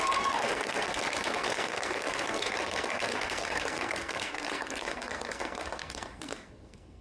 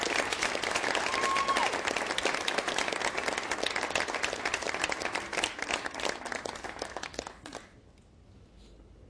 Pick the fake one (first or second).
first